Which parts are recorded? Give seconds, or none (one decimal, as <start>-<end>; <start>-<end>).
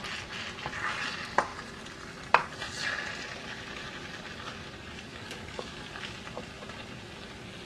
0.0-5.1; 6.0-7.6